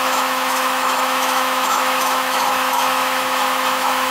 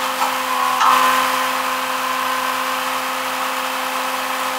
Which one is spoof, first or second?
first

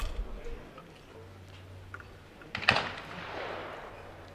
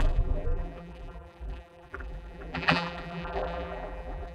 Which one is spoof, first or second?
second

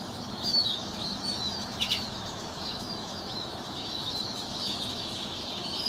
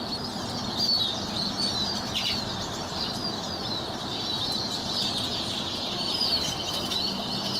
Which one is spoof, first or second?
first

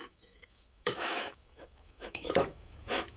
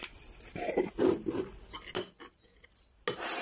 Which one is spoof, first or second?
first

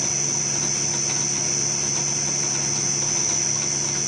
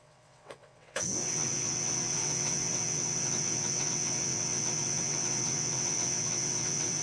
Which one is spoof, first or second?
second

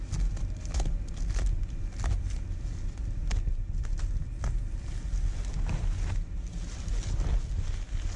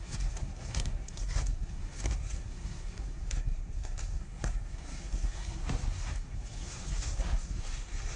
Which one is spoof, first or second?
second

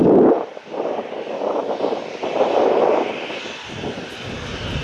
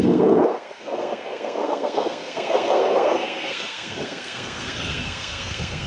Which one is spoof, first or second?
second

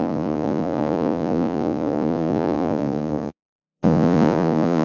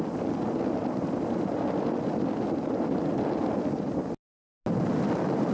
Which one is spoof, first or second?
first